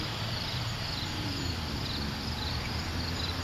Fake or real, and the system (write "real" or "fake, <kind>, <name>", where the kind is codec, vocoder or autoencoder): fake, vocoder, BigVGAN v2